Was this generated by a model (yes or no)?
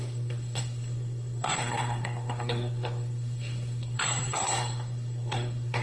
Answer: yes